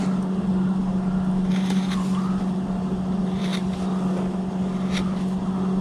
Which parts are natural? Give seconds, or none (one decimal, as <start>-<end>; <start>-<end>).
0.0-5.8